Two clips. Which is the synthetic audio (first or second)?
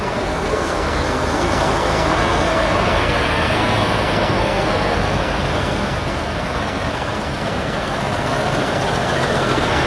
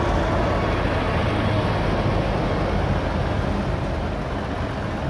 first